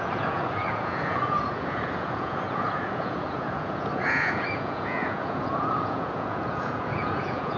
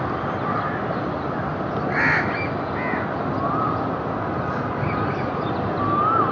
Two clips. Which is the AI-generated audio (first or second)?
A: first